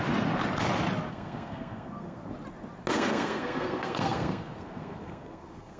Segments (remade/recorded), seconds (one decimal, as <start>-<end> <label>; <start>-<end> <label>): 0.0-1.1 recorded; 1.1-2.3 remade; 2.3-2.9 recorded; 2.9-5.8 remade